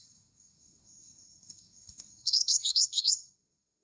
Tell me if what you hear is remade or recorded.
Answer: remade